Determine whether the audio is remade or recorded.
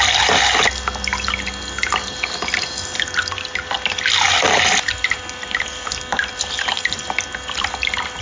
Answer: recorded